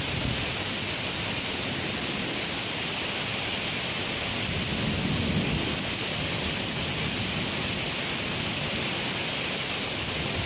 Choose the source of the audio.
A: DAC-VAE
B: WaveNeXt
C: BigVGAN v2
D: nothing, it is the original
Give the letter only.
D